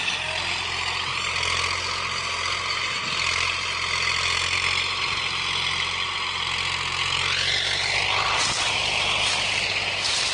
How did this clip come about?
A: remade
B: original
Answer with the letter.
B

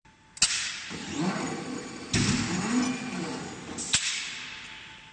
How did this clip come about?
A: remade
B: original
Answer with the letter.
B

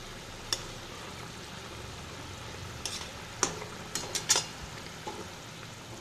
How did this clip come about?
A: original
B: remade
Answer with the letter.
A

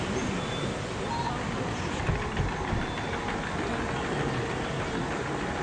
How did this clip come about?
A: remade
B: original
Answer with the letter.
B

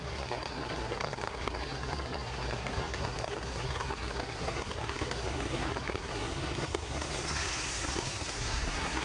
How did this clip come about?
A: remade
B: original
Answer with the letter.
A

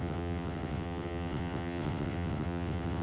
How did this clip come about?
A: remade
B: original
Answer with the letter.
A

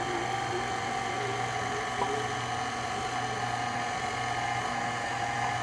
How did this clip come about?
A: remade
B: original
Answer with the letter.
B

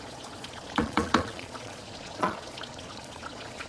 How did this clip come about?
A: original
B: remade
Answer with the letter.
B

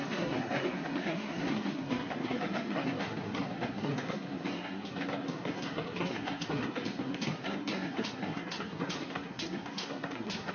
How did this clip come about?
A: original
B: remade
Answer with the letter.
B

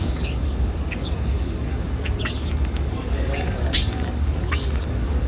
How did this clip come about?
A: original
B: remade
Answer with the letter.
B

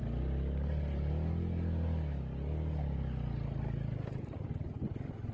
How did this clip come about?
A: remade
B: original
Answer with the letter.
B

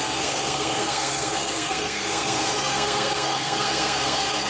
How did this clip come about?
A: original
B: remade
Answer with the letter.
B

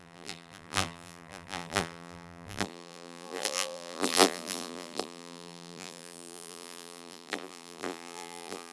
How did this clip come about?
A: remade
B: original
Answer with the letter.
A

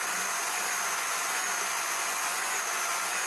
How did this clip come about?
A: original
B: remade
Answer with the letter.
B